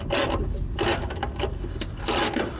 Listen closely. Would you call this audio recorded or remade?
recorded